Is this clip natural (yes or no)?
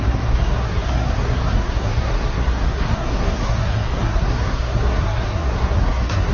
no